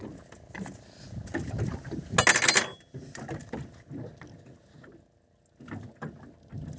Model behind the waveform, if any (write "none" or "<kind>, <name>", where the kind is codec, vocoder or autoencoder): none